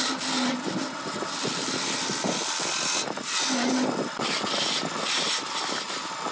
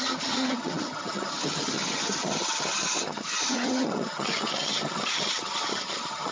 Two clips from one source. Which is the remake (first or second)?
second